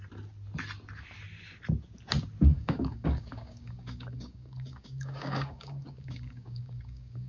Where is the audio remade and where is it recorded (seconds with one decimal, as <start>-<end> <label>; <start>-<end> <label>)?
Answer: 0.0-2.5 recorded; 2.5-7.3 remade